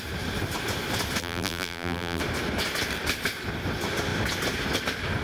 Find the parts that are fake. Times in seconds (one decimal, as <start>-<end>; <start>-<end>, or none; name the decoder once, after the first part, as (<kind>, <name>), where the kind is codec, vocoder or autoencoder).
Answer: 1.2-2.2 (vocoder, BigVGAN v2)